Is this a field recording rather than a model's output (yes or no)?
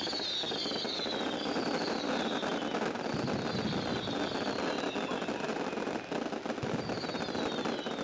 yes